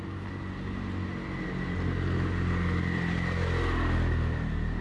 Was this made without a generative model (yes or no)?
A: yes